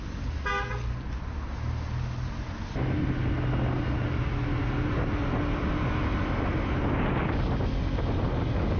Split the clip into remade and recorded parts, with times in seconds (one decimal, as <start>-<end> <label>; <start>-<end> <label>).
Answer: 0.0-8.8 recorded